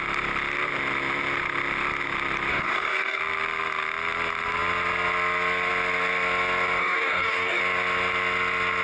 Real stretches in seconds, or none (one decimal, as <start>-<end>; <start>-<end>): 0.0-2.5; 3.2-6.8; 7.6-8.8